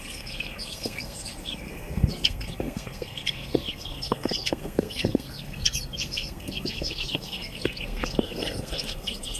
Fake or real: fake